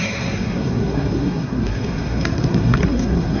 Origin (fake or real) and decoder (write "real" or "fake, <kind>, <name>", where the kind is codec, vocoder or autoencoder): fake, codec, SNAC